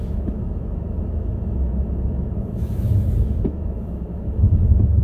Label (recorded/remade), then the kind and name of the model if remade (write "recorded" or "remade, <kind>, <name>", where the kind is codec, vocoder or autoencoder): remade, autoencoder, DAC-VAE